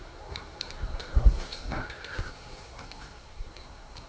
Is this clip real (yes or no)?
no